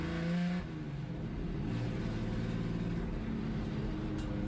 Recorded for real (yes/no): yes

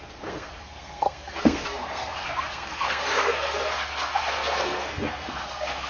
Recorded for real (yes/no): no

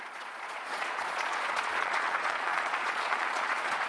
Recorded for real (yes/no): no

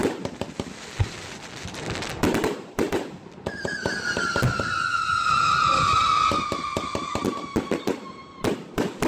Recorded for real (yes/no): no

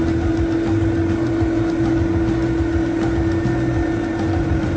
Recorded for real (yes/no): yes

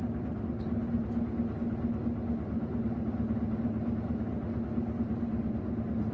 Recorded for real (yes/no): yes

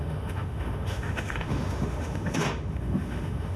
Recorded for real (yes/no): no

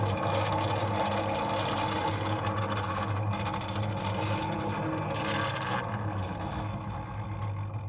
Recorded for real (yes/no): yes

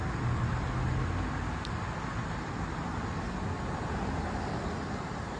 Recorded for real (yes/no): yes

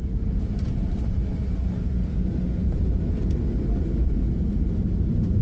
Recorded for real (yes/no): yes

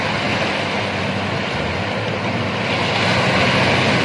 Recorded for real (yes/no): yes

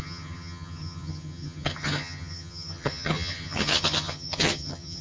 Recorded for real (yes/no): no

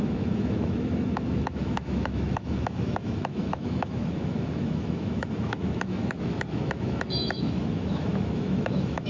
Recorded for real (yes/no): no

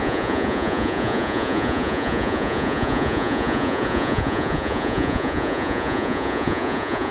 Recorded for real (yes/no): no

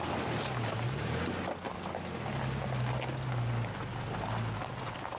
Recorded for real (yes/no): yes